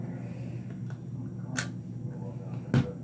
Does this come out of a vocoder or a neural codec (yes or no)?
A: no